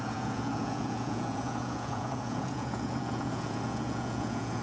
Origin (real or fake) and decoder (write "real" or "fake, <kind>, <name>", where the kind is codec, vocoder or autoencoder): fake, vocoder, Vocos